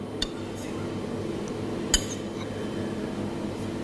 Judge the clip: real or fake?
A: real